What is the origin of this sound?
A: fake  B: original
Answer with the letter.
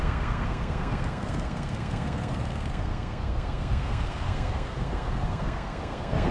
A